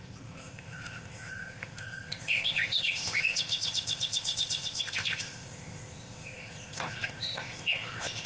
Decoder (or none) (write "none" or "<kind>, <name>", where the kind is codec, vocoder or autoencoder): codec, ZipCodec